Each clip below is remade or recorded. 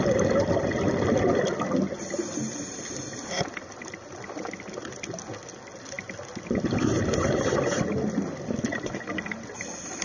recorded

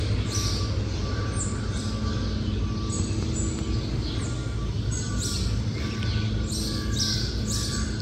recorded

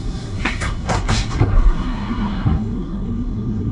remade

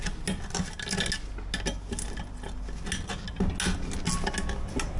recorded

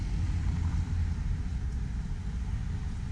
recorded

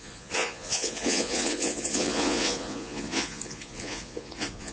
remade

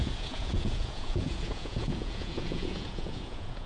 remade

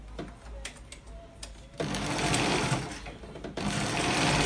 recorded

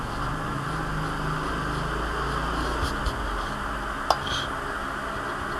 recorded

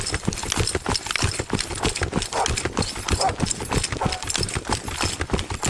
recorded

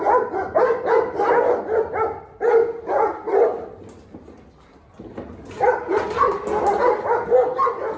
recorded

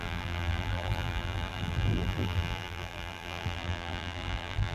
remade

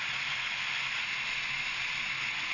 recorded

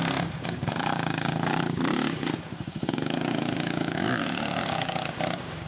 remade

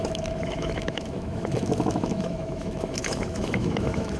remade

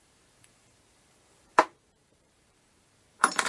remade